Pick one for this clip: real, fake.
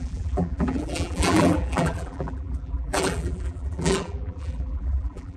fake